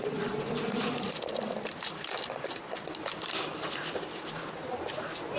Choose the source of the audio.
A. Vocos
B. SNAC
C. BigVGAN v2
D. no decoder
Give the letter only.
D